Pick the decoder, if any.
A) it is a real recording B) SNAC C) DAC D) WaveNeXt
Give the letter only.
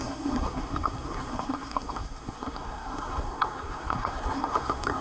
B